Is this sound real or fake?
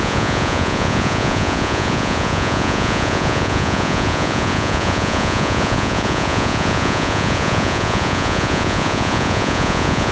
fake